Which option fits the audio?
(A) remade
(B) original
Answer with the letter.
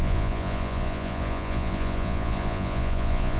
A